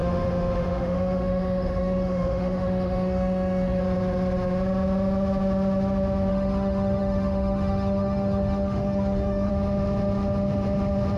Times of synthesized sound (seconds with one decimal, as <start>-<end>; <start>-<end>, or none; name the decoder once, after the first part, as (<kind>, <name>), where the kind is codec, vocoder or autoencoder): 0.0-3.8 (autoencoder, DAC-VAE); 6.3-9.5